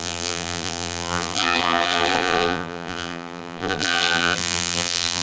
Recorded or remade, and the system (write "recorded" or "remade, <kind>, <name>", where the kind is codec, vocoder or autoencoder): remade, vocoder, BigVGAN v2